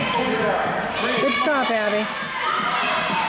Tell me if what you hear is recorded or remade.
recorded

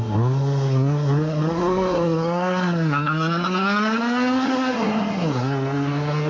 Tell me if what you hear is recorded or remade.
remade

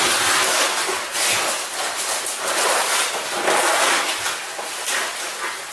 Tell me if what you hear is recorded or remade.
recorded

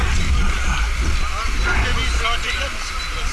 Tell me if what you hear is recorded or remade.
recorded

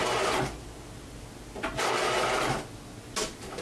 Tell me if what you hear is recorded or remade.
recorded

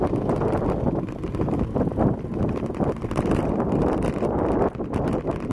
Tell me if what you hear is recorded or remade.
recorded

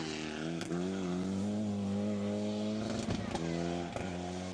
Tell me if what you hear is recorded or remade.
recorded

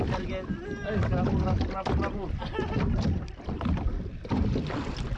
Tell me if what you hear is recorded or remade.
recorded